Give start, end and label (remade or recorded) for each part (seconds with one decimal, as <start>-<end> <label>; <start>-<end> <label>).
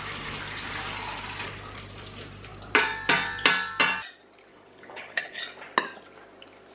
0.0-4.5 recorded; 4.5-5.4 remade; 5.4-6.7 recorded